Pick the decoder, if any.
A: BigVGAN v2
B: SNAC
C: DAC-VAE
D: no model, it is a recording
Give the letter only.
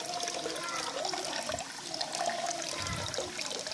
A